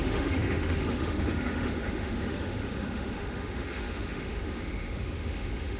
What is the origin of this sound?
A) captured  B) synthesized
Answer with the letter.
B